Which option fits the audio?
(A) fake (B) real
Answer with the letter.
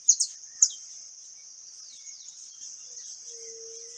B